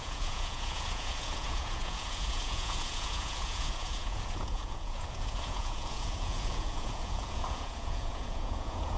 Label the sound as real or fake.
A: fake